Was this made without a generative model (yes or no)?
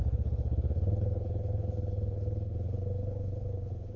no